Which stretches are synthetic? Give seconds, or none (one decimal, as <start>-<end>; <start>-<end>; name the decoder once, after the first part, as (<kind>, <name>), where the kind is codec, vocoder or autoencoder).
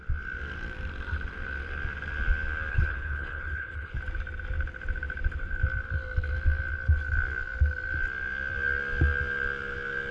2.7-4.0 (codec, HILCodec)